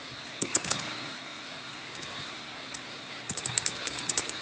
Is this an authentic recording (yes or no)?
no